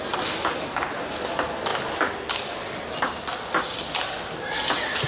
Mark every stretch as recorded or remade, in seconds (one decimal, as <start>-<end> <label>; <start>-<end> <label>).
0.0-5.1 recorded